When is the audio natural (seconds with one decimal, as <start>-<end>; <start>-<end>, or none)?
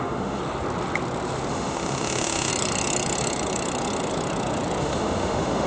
0.4-1.5; 2.5-4.8